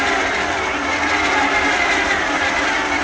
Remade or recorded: recorded